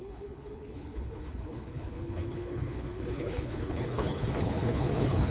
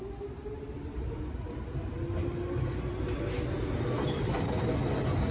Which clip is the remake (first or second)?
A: first